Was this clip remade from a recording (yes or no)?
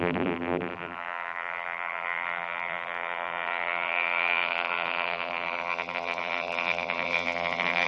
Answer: yes